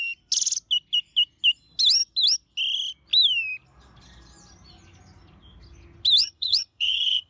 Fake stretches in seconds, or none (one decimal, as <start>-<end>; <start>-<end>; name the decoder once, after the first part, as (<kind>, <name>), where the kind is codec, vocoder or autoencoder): 6.2-7.3 (vocoder, HiFi-GAN)